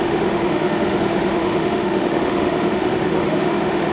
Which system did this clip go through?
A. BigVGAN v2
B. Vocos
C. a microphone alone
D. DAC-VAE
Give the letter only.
D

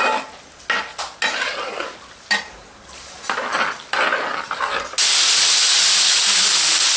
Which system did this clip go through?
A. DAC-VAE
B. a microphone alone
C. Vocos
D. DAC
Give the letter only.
B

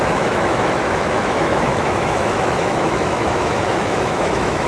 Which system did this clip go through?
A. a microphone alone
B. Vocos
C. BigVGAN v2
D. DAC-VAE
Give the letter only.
D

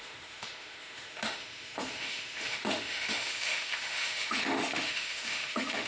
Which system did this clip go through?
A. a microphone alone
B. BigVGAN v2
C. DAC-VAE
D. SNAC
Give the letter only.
C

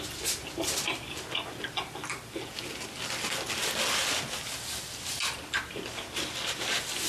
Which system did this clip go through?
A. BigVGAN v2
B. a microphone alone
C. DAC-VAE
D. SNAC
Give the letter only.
B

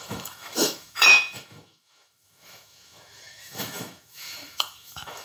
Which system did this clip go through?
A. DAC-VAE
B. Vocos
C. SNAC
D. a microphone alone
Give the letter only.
A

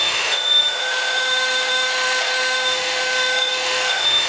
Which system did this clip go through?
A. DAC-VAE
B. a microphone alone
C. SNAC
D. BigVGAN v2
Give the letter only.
A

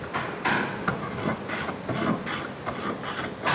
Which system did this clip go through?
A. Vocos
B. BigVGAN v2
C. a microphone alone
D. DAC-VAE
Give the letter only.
C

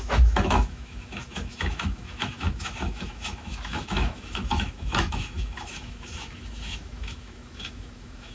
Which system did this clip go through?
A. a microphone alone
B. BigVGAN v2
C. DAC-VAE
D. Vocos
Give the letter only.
C